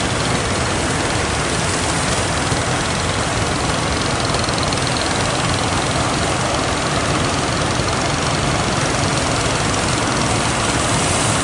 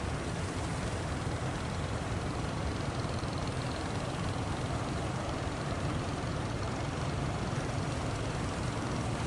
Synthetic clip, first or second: second